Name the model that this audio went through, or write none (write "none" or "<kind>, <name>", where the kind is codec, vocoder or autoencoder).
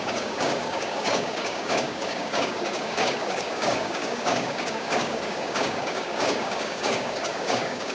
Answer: codec, DAC